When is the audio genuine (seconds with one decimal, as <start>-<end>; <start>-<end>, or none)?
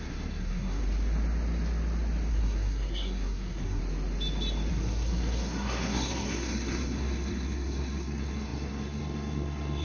0.8-2.3; 3.8-4.7